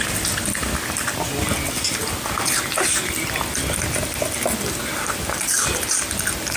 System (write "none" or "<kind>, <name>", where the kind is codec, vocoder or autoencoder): none